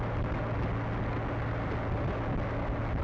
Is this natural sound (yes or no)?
yes